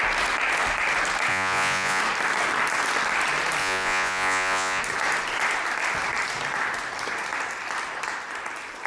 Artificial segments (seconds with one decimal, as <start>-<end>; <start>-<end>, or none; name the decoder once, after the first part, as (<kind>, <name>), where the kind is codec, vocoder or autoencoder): 1.3-2.0 (vocoder, Vocos); 3.6-4.8